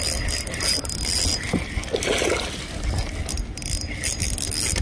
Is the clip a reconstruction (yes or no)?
no